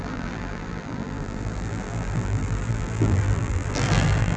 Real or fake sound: fake